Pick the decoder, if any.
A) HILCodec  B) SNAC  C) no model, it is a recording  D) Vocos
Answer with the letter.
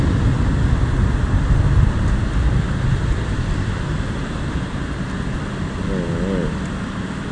C